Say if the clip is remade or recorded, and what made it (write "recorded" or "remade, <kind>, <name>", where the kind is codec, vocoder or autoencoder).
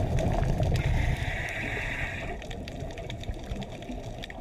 recorded